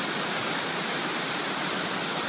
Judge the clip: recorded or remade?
recorded